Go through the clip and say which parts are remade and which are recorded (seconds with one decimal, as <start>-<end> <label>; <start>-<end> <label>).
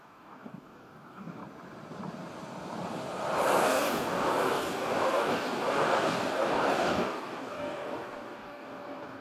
0.0-1.4 remade; 1.4-3.6 recorded; 3.6-9.2 remade